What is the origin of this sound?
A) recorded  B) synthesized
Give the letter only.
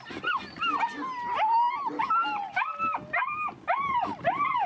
A